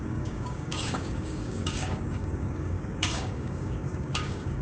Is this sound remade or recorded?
remade